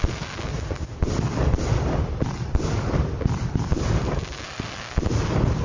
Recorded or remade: recorded